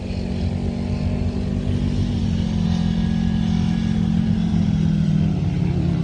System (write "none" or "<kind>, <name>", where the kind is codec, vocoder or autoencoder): none